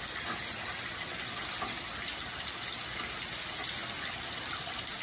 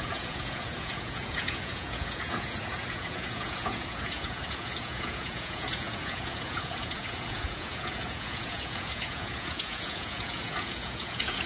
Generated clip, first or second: second